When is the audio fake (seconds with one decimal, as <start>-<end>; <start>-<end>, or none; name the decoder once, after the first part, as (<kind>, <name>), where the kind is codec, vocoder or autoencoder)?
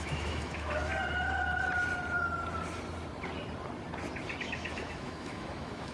0.0-0.9 (autoencoder, DAC-VAE); 4.4-5.9